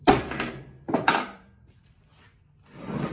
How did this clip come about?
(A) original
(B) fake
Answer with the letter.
B